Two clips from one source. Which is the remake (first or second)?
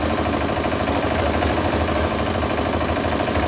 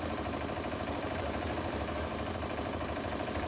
second